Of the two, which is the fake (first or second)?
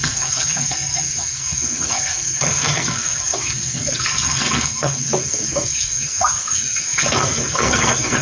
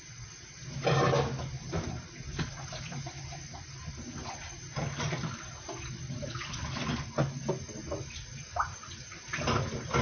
first